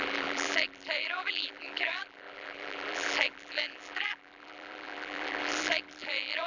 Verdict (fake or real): fake